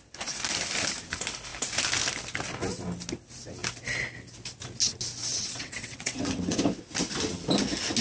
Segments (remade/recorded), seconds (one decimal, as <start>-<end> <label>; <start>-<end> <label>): 0.0-5.2 recorded; 5.2-6.6 remade; 6.6-8.0 recorded